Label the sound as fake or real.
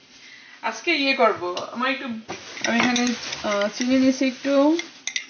real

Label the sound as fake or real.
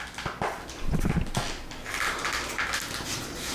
real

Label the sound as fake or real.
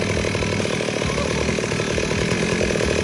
real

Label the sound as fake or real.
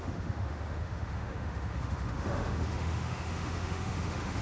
fake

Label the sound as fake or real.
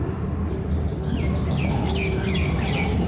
real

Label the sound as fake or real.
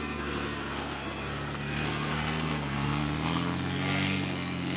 fake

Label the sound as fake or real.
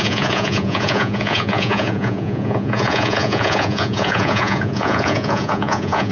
fake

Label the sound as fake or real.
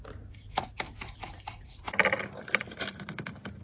fake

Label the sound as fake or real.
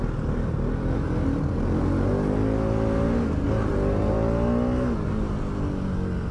real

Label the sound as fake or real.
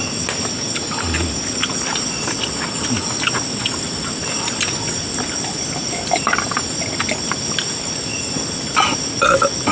real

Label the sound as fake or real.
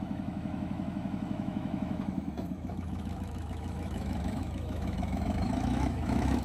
fake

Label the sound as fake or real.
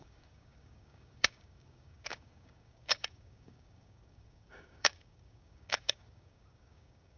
fake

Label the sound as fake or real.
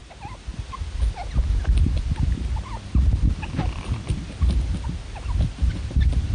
real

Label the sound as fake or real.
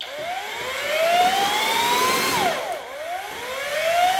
real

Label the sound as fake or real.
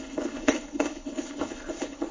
fake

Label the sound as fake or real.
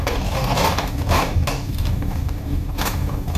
fake